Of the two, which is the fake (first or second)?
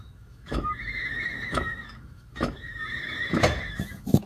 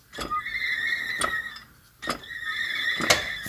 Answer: first